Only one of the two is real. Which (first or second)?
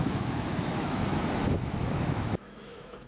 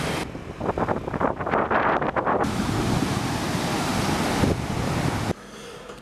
second